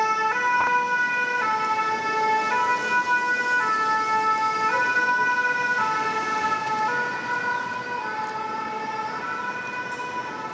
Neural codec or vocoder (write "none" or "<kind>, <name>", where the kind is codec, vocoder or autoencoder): none